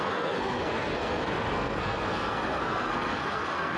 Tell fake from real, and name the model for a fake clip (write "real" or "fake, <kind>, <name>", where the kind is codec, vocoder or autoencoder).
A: fake, codec, SNAC